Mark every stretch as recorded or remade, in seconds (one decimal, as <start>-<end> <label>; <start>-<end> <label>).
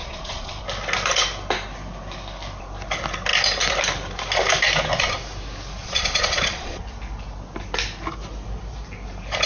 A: 0.0-0.6 remade; 0.6-5.8 recorded; 5.8-6.8 remade; 6.8-9.5 recorded